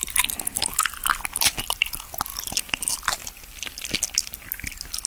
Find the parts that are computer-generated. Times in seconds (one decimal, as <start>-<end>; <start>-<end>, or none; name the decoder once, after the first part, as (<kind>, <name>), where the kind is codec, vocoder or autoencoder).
2.3-3.9 (vocoder, BigVGAN v2)